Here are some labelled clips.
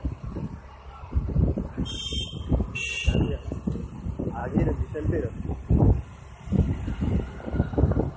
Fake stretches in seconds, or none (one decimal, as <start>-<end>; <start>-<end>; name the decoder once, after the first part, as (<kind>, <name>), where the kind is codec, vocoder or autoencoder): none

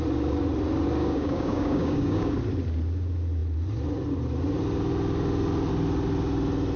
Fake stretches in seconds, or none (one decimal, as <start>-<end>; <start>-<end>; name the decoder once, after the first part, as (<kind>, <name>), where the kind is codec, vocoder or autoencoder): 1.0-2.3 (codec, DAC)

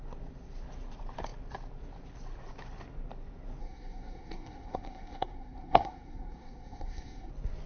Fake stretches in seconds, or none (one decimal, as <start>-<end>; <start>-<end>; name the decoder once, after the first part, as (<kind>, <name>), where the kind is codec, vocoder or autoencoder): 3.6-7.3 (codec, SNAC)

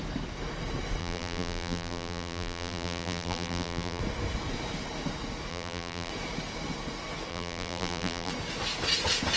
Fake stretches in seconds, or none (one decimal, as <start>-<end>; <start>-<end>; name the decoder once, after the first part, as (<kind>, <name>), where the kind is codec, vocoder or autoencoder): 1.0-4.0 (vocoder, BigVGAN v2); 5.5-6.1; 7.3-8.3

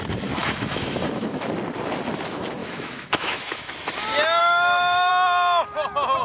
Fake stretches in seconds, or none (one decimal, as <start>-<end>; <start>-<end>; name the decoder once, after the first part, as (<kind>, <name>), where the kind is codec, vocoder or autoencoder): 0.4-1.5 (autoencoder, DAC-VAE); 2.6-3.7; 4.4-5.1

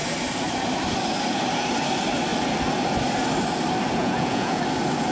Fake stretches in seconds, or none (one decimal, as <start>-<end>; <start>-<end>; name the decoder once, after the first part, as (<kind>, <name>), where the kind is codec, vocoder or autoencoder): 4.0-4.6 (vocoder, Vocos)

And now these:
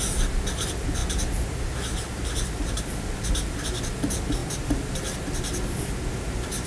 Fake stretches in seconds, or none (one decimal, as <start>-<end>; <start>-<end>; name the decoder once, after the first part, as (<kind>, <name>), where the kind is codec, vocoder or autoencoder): none

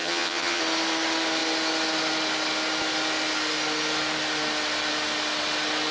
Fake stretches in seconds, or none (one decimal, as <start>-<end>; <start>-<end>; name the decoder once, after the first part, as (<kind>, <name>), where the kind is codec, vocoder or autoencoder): 0.0-0.6 (vocoder, HiFi-GAN)